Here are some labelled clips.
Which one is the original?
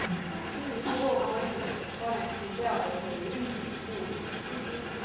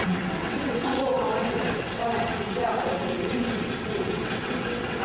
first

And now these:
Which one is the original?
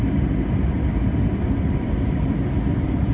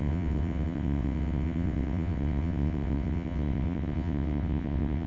first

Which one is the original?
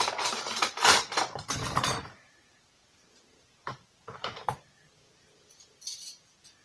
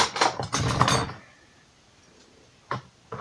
second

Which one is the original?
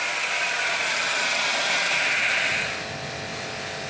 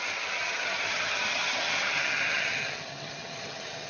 first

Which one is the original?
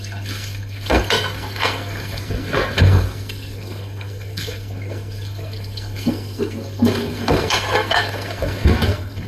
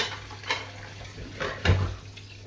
second